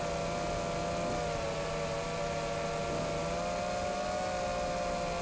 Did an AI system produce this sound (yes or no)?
no